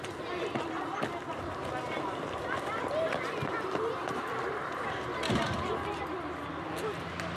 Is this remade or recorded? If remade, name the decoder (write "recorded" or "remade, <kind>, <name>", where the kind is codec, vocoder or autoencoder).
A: remade, vocoder, BigVGAN v2